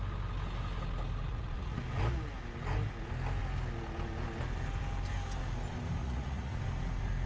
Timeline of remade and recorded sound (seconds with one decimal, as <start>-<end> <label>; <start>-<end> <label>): 0.0-1.3 recorded; 1.3-1.8 remade; 1.8-6.0 recorded; 6.0-6.6 remade; 6.6-7.3 recorded